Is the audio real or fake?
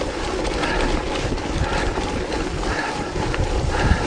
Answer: real